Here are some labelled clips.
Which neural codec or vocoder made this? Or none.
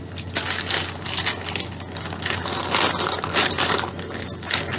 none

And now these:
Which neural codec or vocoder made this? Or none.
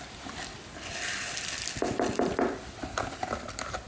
none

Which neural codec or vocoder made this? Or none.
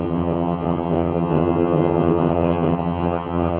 vocoder, HiFi-GAN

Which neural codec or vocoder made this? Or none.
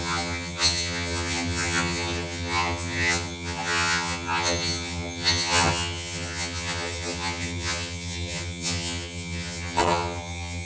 vocoder, HiFi-GAN